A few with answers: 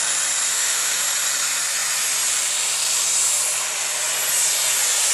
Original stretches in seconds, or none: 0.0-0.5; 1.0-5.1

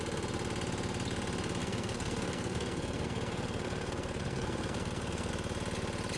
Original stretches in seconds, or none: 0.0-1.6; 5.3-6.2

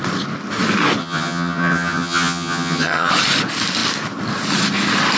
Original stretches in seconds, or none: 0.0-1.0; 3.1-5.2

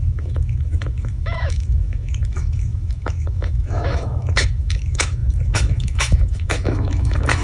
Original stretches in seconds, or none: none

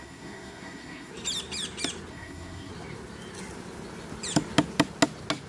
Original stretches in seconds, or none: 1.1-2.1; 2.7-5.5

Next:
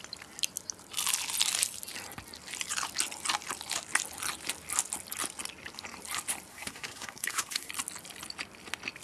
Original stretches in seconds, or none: 0.0-6.5; 7.7-9.0